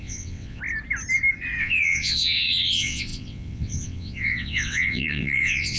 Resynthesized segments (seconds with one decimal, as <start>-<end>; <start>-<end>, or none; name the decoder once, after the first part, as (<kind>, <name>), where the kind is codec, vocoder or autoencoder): 0.0-0.6 (vocoder, WaveNeXt); 1.6-5.8